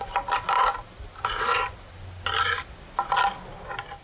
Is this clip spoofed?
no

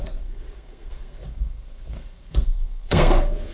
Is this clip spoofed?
yes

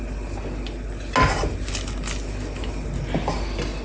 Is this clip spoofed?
no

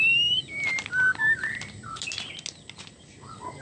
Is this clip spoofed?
no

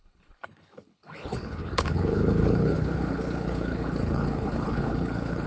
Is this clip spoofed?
yes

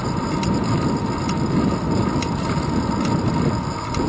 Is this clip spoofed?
no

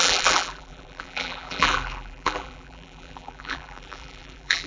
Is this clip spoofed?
yes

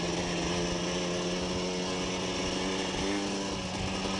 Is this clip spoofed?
no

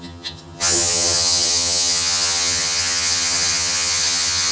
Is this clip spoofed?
yes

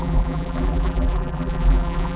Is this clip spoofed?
yes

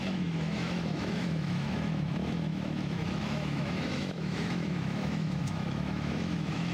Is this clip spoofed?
yes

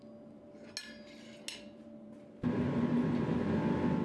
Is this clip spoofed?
no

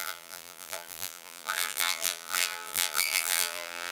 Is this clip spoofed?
yes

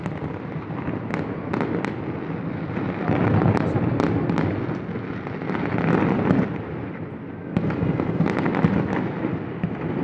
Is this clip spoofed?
no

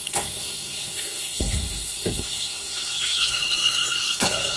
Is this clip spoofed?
yes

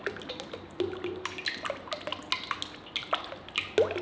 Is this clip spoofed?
no